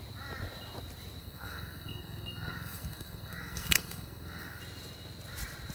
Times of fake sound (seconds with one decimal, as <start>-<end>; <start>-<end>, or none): 1.2-4.6